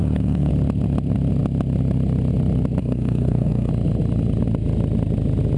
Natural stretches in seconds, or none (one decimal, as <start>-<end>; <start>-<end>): 0.5-2.8; 3.7-5.6